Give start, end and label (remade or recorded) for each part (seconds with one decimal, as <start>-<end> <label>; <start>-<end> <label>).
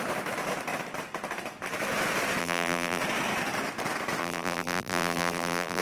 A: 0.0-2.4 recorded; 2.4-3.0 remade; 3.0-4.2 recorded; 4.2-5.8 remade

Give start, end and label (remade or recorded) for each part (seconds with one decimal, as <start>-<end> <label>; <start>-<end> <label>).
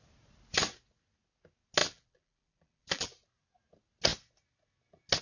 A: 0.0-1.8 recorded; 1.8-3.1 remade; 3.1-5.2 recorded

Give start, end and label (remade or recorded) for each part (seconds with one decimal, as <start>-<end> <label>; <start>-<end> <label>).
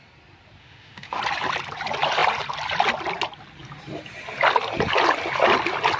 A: 0.0-0.6 recorded; 0.6-1.2 remade; 1.2-6.0 recorded